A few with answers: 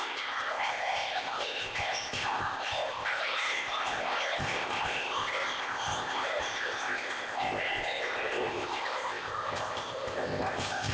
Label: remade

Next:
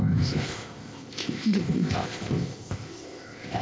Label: remade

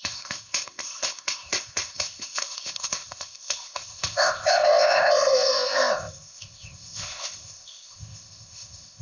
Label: remade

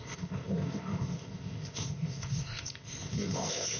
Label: remade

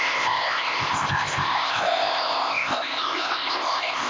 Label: remade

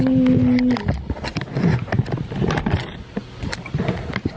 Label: recorded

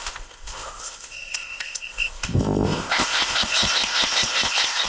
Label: remade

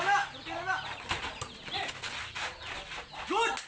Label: recorded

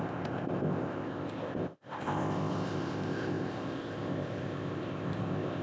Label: remade